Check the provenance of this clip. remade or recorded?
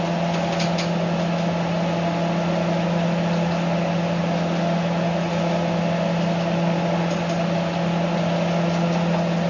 recorded